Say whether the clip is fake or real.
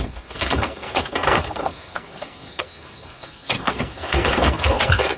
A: fake